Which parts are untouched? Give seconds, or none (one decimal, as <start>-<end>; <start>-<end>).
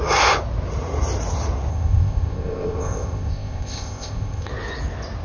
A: 0.0-1.7; 4.5-5.2